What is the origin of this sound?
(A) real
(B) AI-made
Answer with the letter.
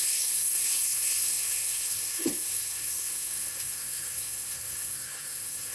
B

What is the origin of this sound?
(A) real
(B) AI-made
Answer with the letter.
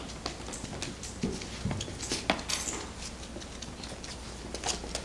A